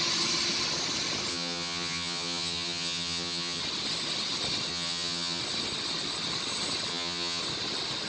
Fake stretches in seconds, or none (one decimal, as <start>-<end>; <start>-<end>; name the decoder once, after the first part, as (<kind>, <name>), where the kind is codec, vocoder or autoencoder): 1.3-3.6 (vocoder, HiFi-GAN); 4.7-5.4; 6.9-7.4